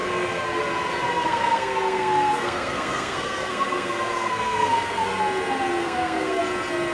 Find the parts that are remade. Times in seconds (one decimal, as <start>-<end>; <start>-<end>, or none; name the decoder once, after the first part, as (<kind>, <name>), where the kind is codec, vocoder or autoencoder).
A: 0.0-0.6 (codec, SNAC); 1.1-5.2; 5.8-6.4

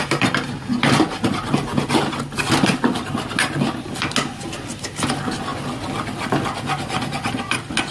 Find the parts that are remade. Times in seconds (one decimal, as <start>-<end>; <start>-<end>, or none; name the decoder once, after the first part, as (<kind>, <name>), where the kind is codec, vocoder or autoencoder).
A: none

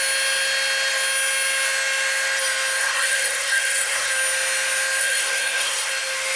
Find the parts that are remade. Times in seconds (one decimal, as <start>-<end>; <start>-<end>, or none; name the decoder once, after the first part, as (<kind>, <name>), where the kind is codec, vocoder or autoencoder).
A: 2.8-4.1 (codec, SNAC); 5.0-5.9

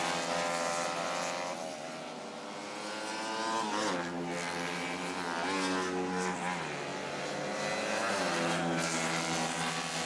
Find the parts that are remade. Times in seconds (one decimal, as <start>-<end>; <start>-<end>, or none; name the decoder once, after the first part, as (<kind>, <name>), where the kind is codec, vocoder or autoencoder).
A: none

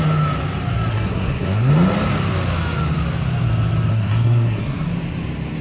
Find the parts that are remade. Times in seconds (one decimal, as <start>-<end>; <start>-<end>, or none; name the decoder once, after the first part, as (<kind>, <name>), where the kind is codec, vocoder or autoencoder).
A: 0.9-1.7 (codec, SNAC); 3.9-4.9

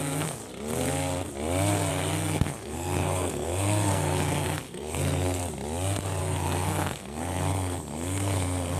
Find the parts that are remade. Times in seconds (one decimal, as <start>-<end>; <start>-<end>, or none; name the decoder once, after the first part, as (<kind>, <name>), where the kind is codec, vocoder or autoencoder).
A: 0.0-0.4 (codec, SNAC); 1.9-5.4; 6.2-8.8

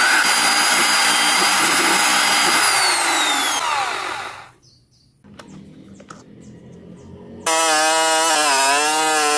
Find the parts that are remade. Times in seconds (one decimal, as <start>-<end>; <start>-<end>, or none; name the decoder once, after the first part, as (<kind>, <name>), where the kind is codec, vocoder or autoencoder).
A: none

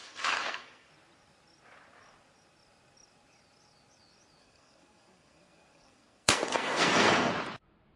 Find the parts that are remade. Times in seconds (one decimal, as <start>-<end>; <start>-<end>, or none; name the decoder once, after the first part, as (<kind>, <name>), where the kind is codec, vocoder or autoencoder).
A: 0.0-0.9 (codec, SNAC); 4.4-7.3